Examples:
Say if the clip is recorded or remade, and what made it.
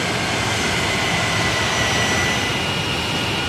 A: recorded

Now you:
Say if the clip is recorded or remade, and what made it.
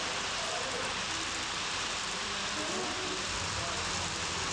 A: recorded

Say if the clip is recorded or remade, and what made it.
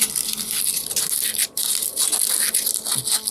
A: recorded